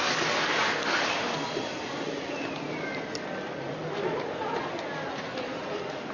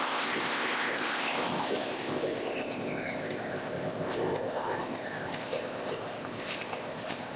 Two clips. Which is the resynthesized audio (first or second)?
second